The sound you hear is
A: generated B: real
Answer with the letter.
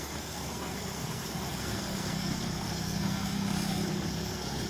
A